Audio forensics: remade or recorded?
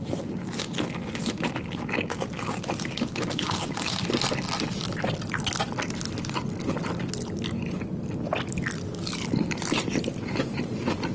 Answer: recorded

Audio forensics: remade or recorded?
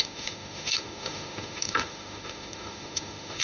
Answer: remade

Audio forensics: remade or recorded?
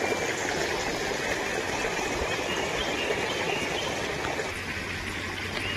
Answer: recorded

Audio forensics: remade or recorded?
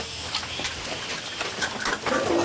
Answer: recorded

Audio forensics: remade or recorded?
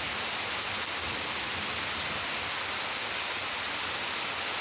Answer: recorded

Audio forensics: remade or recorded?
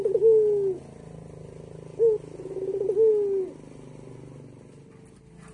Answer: recorded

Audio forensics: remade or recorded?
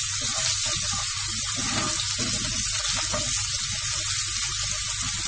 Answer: recorded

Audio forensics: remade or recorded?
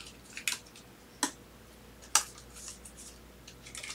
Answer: recorded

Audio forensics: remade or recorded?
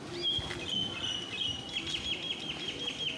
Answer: recorded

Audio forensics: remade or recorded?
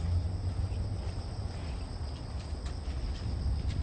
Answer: recorded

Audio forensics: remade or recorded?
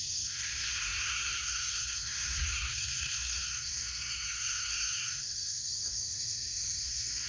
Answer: remade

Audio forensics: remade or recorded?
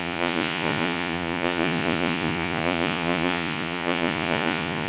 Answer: remade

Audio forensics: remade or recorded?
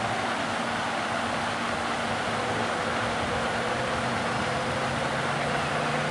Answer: recorded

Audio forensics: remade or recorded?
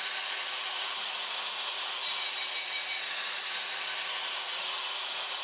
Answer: remade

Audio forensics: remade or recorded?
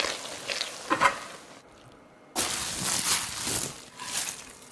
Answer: recorded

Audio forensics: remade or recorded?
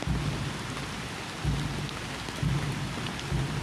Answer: recorded